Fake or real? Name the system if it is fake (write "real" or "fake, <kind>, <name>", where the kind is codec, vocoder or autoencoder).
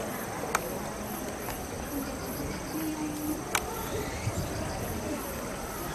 real